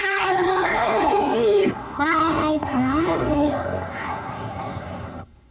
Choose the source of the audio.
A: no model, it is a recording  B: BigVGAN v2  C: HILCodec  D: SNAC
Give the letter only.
D